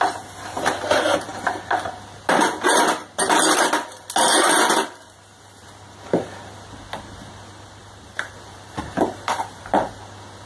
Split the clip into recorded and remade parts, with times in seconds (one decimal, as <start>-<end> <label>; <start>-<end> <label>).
0.0-7.8 recorded; 7.8-9.6 remade; 9.6-10.5 recorded